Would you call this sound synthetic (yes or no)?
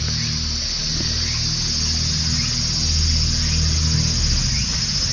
no